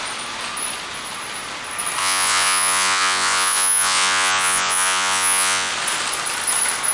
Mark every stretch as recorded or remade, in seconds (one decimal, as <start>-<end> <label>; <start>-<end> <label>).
0.0-2.0 recorded; 2.0-5.7 remade; 5.7-6.9 recorded